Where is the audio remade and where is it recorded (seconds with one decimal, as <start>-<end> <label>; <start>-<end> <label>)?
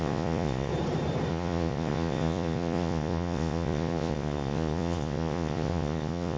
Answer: 0.0-0.7 remade; 0.7-1.3 recorded; 1.3-6.4 remade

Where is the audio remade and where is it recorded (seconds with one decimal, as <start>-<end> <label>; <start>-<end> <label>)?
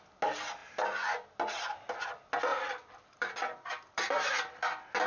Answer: 0.0-2.5 recorded; 2.5-4.5 remade; 4.5-5.1 recorded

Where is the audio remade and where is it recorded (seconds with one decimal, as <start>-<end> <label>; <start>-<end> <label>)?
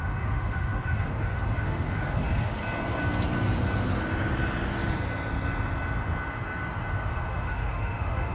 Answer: 0.0-2.6 remade; 2.6-7.3 recorded; 7.3-8.3 remade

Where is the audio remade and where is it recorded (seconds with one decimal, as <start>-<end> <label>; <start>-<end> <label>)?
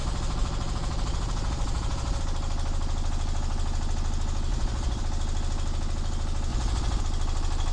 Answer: 0.0-2.2 remade; 2.2-4.5 recorded; 4.5-5.0 remade; 5.0-6.5 recorded; 6.5-7.0 remade; 7.0-7.7 recorded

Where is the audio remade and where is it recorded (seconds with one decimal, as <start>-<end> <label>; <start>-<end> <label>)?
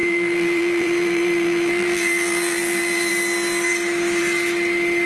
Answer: 0.0-3.1 remade; 3.1-5.1 recorded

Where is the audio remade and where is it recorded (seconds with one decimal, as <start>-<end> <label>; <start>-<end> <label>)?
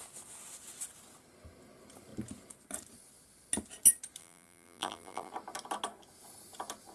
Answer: 0.0-4.2 recorded; 4.2-5.3 remade; 5.3-6.9 recorded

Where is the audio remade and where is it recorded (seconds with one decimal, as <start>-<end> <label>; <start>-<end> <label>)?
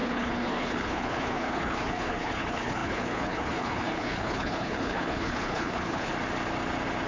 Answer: 0.0-6.1 remade; 6.1-7.1 recorded